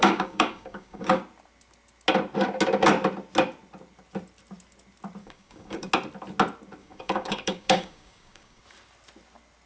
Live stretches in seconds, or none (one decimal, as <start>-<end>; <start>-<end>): 1.2-5.2; 5.9-6.8; 8.6-9.7

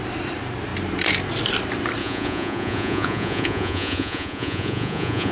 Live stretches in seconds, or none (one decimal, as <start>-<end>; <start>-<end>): 0.0-2.0

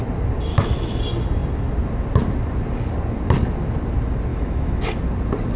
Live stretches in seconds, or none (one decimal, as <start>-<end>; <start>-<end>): 0.0-0.5; 1.0-4.3; 4.8-5.6

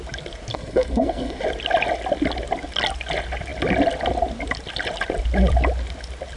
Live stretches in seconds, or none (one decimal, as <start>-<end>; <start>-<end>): 0.0-0.5; 1.4-6.4

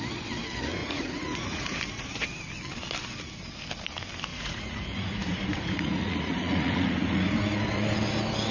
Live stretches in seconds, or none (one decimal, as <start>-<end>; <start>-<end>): 0.0-0.8; 1.8-4.3; 7.4-8.5